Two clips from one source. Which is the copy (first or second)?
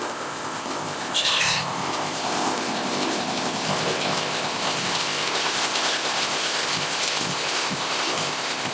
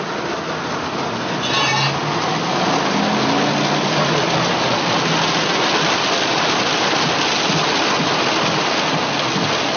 first